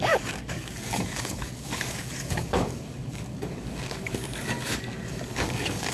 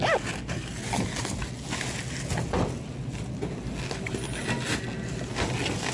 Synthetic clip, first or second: first